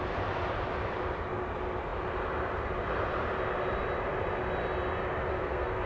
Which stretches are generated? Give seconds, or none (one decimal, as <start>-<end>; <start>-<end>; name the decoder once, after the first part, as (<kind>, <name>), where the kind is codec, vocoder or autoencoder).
5.3-5.9 (codec, SNAC)